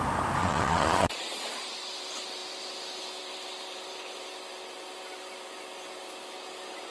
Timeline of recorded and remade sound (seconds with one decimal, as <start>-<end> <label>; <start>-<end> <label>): 0.0-0.4 recorded; 0.4-1.5 remade; 1.5-6.9 recorded